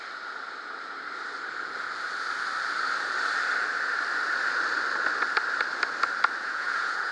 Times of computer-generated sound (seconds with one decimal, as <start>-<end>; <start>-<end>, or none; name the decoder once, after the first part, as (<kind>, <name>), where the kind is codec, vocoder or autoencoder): 6.4-7.1 (vocoder, Vocos)